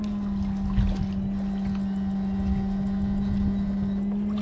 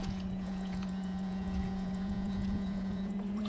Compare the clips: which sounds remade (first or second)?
second